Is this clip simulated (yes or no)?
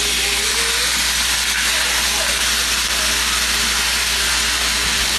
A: no